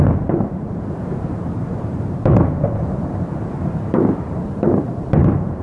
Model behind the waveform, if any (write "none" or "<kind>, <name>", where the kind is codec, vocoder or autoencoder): vocoder, BigVGAN v2